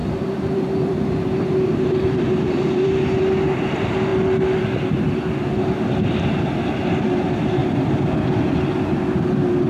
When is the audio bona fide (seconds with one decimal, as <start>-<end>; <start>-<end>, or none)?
3.2-9.7